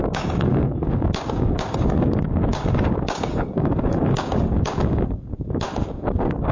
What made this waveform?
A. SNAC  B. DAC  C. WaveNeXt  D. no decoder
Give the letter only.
B